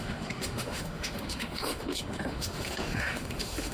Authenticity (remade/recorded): remade